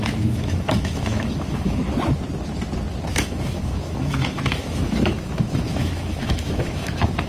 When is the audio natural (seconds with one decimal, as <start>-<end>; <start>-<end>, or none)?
1.8-3.1